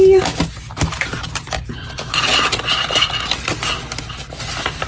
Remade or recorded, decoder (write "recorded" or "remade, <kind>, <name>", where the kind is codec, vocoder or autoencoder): recorded